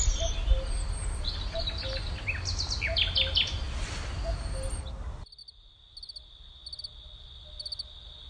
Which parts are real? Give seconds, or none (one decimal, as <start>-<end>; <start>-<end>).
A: 0.0-8.3